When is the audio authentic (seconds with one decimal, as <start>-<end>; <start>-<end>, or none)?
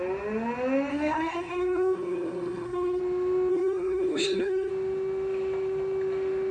0.0-0.9; 3.0-3.5; 4.7-6.5